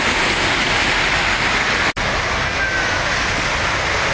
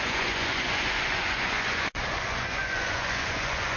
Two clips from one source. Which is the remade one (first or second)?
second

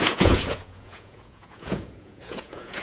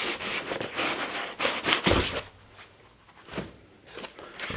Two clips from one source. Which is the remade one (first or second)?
first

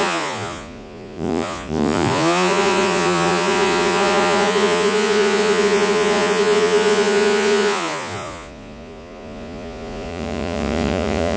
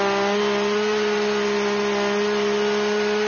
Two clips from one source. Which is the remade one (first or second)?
first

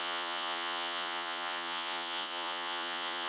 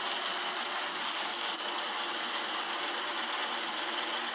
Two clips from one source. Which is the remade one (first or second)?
first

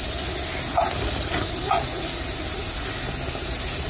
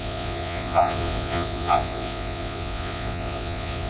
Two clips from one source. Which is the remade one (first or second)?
second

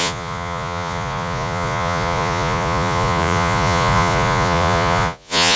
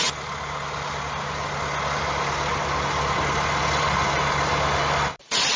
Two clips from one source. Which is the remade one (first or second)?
first